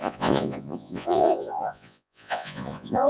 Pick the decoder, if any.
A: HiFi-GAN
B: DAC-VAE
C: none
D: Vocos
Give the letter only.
D